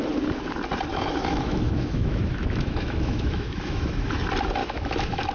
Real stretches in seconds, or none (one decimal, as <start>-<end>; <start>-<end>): 0.0-0.9; 4.1-4.6